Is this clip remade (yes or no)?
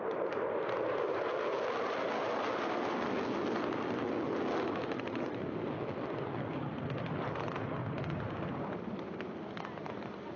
no